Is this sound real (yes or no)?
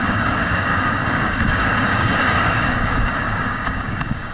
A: no